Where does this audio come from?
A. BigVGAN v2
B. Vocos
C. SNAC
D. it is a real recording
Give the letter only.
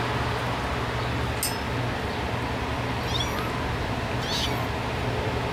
D